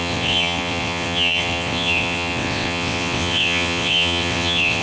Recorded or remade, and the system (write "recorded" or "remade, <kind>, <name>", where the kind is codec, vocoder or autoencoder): remade, vocoder, WaveNeXt